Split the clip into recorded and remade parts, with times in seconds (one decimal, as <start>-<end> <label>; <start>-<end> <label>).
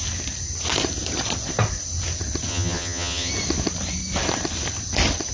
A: 0.0-2.5 recorded; 2.5-3.3 remade; 3.3-5.3 recorded